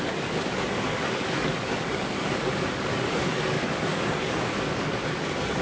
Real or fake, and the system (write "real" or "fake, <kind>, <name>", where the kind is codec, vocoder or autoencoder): fake, codec, DAC